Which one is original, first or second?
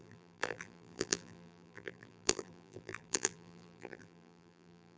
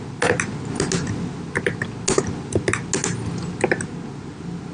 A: second